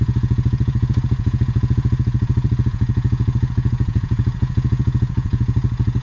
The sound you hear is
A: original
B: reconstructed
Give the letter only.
B